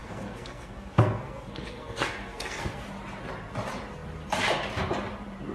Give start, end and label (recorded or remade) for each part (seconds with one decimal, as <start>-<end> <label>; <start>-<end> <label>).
0.0-2.8 remade; 2.8-5.5 recorded